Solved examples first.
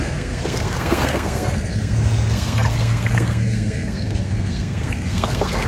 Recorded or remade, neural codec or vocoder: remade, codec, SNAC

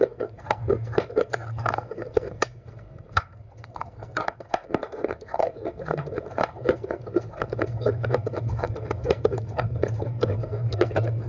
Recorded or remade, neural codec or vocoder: remade, codec, SNAC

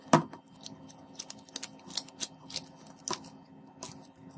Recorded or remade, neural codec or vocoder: recorded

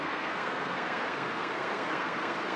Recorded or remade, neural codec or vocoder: remade, codec, SNAC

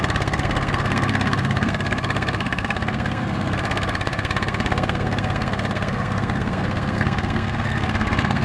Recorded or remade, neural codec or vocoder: remade, codec, SNAC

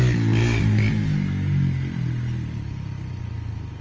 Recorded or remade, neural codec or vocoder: recorded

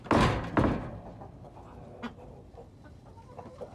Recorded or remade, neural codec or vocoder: recorded